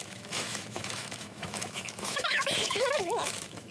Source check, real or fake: fake